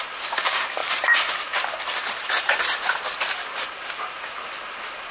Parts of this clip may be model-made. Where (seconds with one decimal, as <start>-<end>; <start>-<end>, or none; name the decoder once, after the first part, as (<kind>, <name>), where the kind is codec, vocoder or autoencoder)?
0.8-3.7 (vocoder, BigVGAN v2)